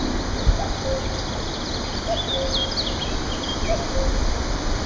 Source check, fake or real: real